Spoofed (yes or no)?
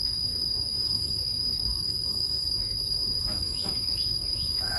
yes